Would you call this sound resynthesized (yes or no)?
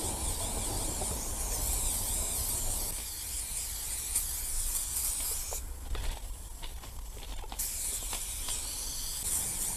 no